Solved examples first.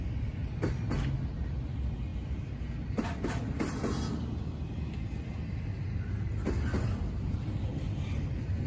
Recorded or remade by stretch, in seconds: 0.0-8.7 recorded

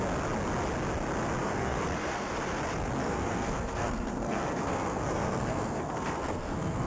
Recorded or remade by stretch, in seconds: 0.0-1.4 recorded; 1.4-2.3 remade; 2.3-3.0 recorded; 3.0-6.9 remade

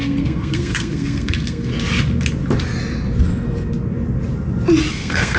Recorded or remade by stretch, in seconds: 0.0-1.7 remade; 1.7-4.9 recorded; 4.9-5.4 remade

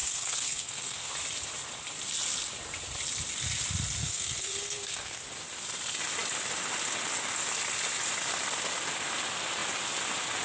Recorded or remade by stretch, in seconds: 0.0-1.1 remade; 1.1-4.0 recorded; 4.0-5.2 remade; 5.2-10.4 recorded

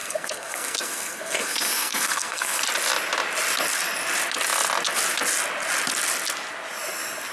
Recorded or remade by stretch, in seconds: 0.0-2.6 remade; 2.6-7.3 recorded